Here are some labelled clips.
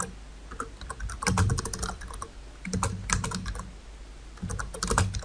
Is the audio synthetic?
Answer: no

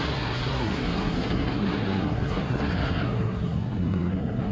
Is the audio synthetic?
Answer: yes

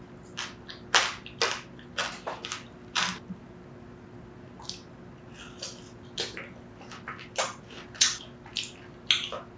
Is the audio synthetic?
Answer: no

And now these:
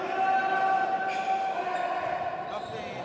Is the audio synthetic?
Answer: no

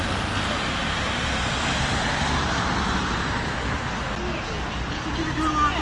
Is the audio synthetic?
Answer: no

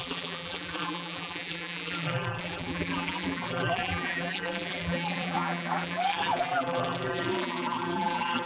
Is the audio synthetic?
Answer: yes